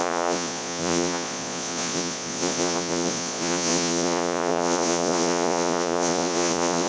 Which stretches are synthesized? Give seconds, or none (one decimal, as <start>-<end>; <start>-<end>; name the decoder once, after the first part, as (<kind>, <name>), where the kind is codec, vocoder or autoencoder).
0.0-6.9 (vocoder, Vocos)